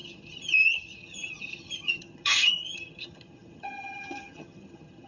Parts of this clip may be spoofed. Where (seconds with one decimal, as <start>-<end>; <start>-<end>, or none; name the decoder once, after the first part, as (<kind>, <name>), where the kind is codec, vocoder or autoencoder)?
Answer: 0.0-5.1 (vocoder, HiFi-GAN)